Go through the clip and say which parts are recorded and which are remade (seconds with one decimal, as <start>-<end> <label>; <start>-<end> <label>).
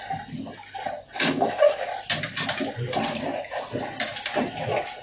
0.0-1.2 recorded; 1.2-1.9 remade; 1.9-5.0 recorded